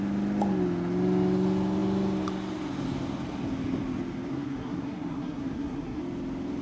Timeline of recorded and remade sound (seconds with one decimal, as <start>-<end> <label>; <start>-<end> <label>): 0.0-4.3 recorded; 4.3-6.0 remade; 6.0-6.6 recorded